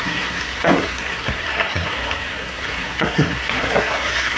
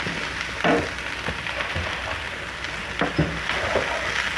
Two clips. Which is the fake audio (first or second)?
first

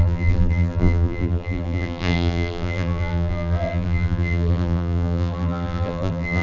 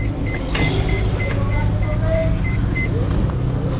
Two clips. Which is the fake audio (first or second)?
first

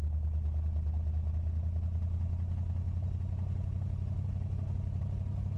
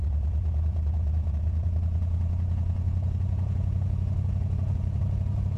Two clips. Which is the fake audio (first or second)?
second